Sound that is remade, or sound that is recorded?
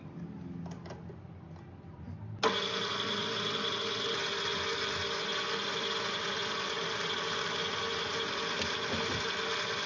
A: recorded